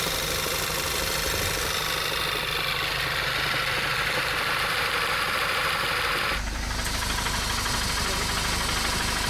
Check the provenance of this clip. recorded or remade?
recorded